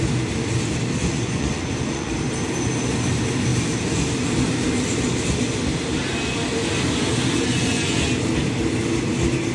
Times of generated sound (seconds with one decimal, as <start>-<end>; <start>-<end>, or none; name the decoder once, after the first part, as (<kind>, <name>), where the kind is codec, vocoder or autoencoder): 1.0-2.1 (vocoder, Vocos); 7.5-8.1